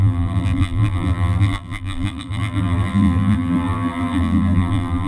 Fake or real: fake